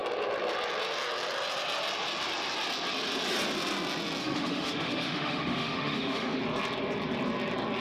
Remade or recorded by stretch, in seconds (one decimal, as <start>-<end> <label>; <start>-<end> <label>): 0.0-4.2 recorded; 4.2-6.4 remade; 6.4-7.8 recorded